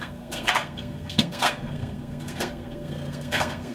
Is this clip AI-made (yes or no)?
yes